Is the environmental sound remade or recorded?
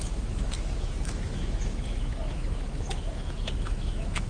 remade